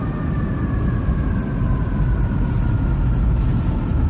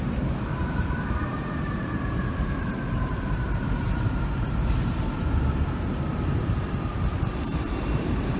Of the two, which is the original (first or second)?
first